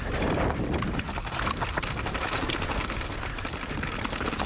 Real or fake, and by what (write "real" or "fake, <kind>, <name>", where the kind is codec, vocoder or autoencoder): real